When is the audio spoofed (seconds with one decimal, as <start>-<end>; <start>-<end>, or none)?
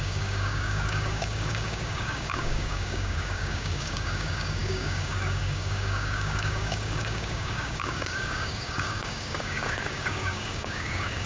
0.0-11.3